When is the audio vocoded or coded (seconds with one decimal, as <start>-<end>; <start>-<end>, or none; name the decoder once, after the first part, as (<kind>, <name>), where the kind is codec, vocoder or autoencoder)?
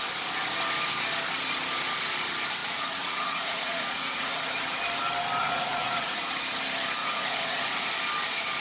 2.6-4.8 (vocoder, Vocos); 5.4-6.2; 7.0-7.9